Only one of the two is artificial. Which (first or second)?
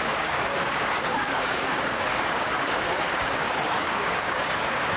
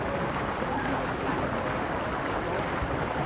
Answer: first